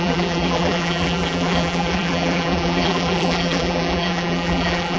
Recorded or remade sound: remade